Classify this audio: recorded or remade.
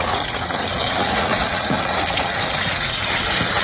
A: remade